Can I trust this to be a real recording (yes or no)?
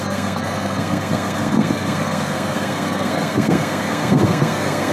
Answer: no